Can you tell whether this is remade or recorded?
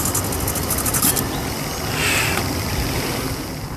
recorded